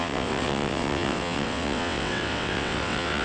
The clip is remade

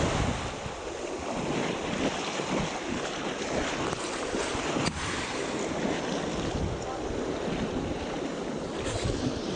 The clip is recorded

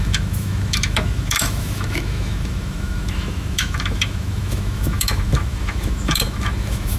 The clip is remade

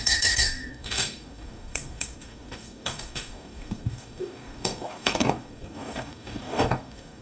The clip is remade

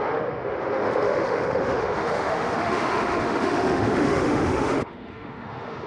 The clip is remade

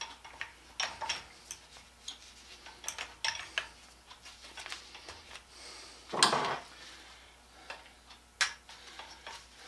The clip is recorded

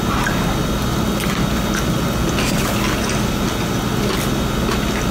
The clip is recorded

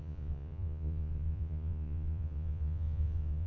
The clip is remade